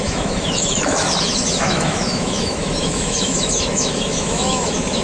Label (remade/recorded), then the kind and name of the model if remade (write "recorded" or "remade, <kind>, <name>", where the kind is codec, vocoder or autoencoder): remade, autoencoder, DAC-VAE